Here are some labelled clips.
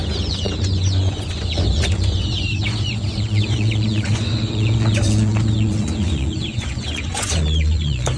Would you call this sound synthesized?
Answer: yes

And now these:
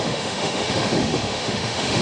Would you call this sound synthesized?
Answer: yes